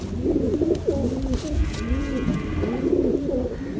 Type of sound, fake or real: real